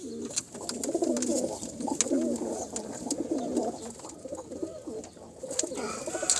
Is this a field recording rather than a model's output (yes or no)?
yes